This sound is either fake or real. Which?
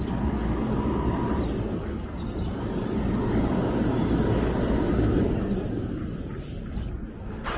real